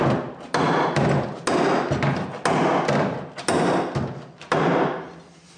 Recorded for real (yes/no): yes